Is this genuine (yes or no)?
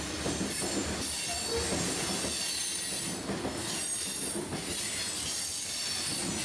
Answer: yes